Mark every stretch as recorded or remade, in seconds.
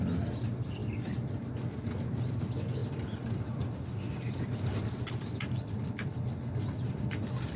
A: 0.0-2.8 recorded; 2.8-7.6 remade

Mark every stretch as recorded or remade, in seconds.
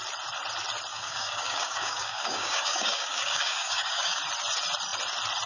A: 0.0-0.9 recorded; 0.9-4.2 remade; 4.2-5.5 recorded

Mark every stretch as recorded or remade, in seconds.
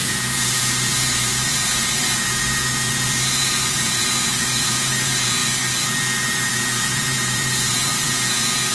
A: 0.0-5.4 remade; 5.4-6.5 recorded; 6.5-8.7 remade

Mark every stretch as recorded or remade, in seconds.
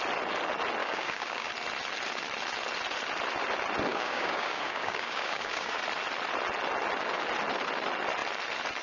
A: 0.0-0.8 recorded; 0.8-1.5 remade; 1.5-3.9 recorded; 3.9-5.8 remade; 5.8-8.8 recorded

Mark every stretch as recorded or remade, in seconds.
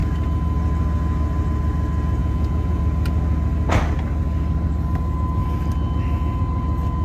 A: 0.0-2.2 recorded; 2.2-2.8 remade; 2.8-7.0 recorded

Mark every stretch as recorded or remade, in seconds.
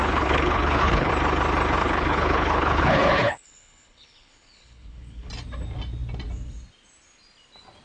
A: 0.0-1.1 remade; 1.1-1.8 recorded; 1.8-5.3 remade; 5.3-7.8 recorded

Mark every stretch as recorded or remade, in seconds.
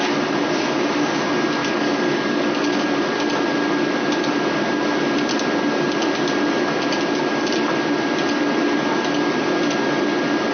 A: 0.0-1.6 recorded; 1.6-2.8 remade; 2.8-10.5 recorded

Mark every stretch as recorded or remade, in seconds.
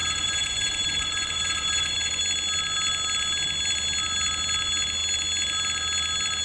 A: 0.0-2.2 remade; 2.2-6.4 recorded